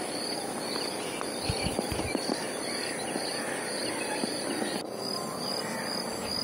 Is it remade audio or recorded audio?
recorded